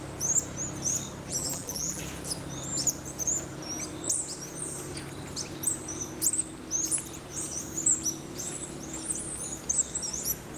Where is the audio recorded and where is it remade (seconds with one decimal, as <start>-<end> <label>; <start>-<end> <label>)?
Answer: 0.0-1.3 recorded; 1.3-2.0 remade; 2.0-10.6 recorded